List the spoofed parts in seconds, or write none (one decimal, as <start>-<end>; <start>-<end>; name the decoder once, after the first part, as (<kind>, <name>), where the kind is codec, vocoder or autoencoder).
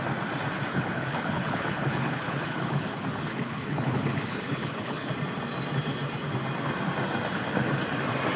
0.7-5.1 (codec, HILCodec)